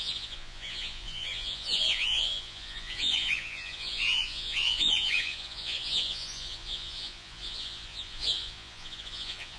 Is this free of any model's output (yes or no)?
no